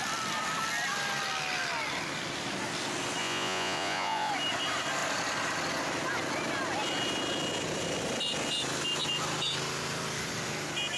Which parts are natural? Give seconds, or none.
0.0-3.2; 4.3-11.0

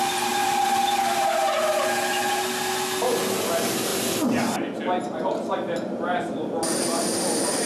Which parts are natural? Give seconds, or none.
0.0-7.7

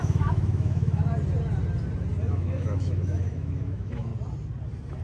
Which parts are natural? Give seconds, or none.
1.0-2.3; 4.1-5.0

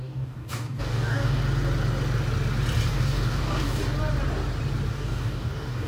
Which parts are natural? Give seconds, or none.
1.4-2.9; 3.8-4.9

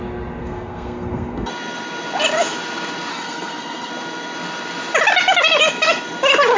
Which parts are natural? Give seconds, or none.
0.0-0.4; 1.5-3.1; 3.9-6.6

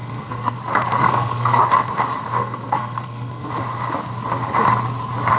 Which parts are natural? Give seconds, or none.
0.6-1.0; 1.6-2.4; 3.5-5.4

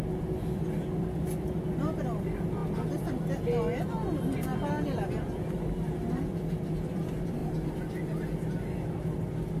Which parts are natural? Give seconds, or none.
0.0-9.6